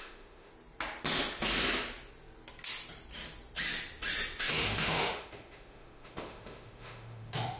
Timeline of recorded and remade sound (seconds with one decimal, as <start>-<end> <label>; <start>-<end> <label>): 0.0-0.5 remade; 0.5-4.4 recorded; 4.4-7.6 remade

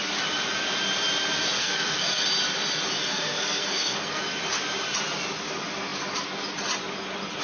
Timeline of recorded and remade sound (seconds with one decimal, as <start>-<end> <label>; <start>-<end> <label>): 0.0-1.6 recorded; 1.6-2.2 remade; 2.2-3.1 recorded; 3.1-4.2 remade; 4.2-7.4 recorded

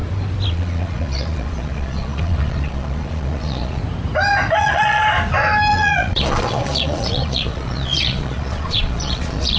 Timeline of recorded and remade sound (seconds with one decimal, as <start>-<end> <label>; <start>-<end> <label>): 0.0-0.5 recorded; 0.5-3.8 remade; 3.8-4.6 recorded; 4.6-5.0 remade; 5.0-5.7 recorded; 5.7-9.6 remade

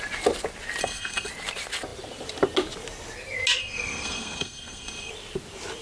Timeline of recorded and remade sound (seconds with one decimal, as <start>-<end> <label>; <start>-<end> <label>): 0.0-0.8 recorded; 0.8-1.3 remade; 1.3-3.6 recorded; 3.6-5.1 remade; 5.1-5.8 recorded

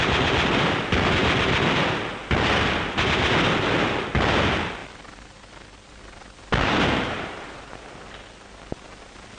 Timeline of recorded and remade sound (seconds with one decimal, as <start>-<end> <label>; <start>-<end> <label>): 0.0-9.4 recorded